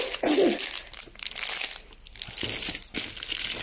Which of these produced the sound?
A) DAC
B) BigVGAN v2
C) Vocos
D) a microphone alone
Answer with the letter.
D